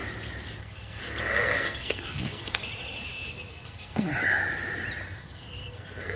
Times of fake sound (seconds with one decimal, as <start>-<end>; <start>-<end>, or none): 0.6-2.6; 3.5-4.1; 5.2-6.2